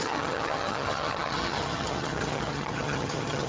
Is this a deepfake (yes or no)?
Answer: yes